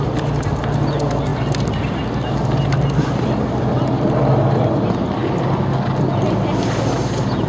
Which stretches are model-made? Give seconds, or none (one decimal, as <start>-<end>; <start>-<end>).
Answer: 1.3-2.0